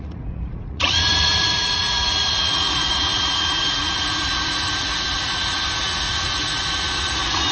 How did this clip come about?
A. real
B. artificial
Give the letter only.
B